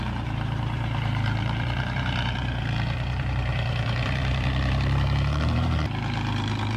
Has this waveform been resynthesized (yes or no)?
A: yes